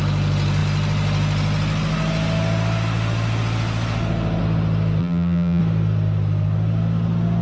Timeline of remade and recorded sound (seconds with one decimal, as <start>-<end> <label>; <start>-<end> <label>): 0.0-5.0 recorded; 5.0-5.6 remade; 5.6-7.4 recorded